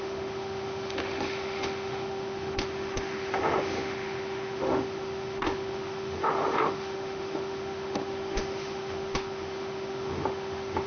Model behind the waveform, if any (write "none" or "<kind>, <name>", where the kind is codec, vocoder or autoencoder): autoencoder, DAC-VAE